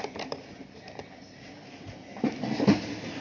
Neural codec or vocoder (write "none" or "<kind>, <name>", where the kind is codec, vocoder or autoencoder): none